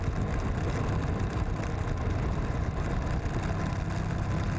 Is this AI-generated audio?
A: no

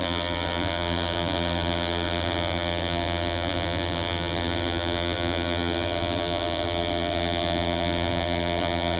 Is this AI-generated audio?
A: yes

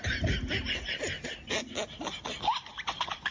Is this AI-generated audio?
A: no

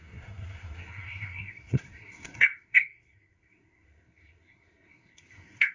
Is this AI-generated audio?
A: yes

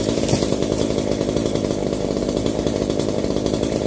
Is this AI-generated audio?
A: yes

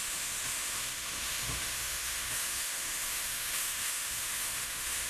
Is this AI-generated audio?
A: yes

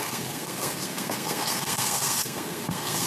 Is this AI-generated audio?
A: yes